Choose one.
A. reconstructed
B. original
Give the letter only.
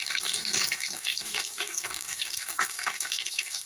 A